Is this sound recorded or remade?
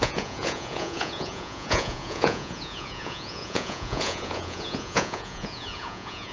remade